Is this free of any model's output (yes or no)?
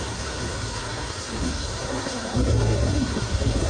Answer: no